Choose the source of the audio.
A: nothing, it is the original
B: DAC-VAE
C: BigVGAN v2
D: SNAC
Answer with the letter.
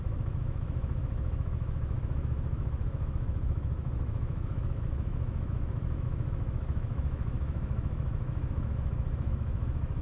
B